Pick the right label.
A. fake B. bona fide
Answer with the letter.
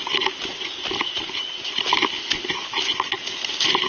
B